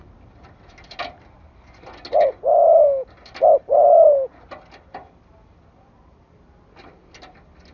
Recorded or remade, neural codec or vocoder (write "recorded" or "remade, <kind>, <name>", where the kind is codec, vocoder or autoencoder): recorded